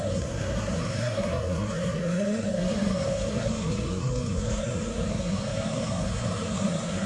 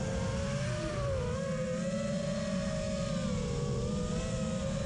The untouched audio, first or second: second